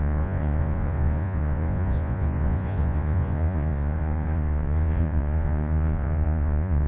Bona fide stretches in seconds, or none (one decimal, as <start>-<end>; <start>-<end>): none